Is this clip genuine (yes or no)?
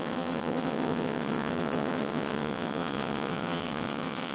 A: no